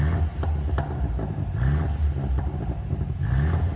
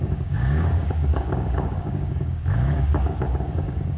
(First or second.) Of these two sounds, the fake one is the second